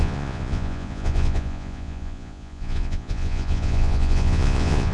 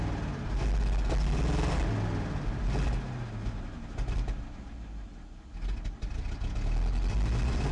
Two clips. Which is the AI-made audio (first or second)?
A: first